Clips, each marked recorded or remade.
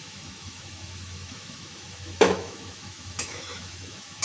remade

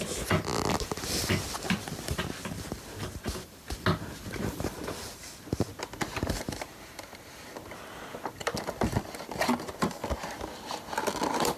recorded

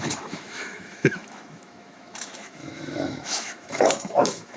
remade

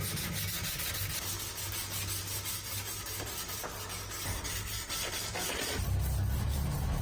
recorded